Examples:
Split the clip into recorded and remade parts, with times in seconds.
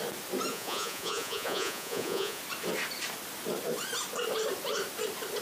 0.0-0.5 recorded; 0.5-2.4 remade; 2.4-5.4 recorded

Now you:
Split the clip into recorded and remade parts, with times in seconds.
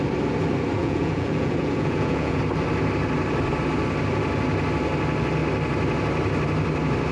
0.0-0.8 recorded; 0.8-2.4 remade; 2.4-7.1 recorded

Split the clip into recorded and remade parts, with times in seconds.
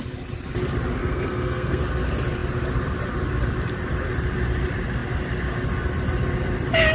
0.0-1.0 recorded; 1.0-1.8 remade; 1.8-6.9 recorded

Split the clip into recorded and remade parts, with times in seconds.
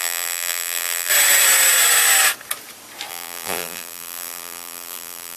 0.0-1.1 remade; 1.1-3.1 recorded; 3.1-5.4 remade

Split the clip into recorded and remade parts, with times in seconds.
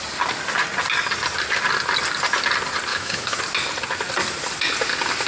0.0-2.9 recorded; 2.9-3.4 remade; 3.4-5.3 recorded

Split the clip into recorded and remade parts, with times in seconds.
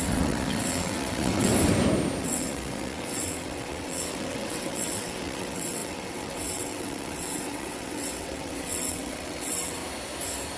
0.0-1.5 remade; 1.5-2.2 recorded; 2.2-9.8 remade; 9.8-10.6 recorded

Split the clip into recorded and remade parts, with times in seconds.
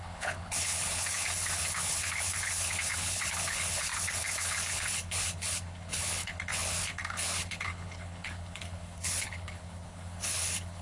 0.0-10.8 remade